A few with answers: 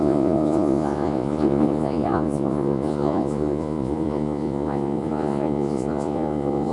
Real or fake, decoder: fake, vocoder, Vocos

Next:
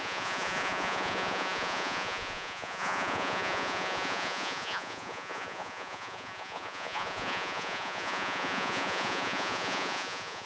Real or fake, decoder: fake, vocoder, Vocos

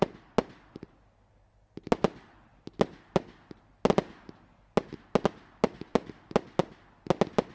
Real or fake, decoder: real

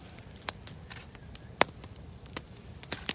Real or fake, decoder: real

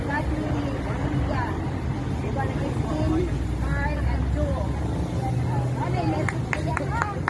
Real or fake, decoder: real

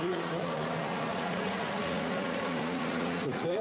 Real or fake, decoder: fake, vocoder, Vocos